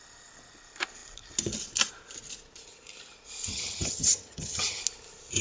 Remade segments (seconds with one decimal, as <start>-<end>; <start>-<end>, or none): 3.5-4.8